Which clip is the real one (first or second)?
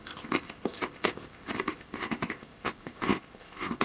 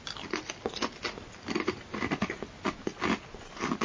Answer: second